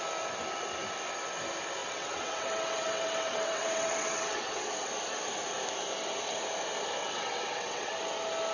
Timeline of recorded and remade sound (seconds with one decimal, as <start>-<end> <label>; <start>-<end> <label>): 0.0-1.8 recorded; 1.8-4.9 remade; 4.9-7.0 recorded; 7.0-8.0 remade; 8.0-8.5 recorded